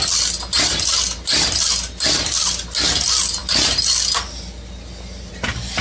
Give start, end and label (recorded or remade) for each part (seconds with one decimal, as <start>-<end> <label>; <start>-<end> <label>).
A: 0.0-5.8 recorded